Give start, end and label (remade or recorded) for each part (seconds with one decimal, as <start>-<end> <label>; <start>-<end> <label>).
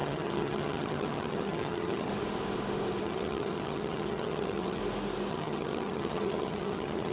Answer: 0.0-2.1 remade; 2.1-3.0 recorded; 3.0-4.8 remade; 4.8-5.3 recorded; 5.3-7.1 remade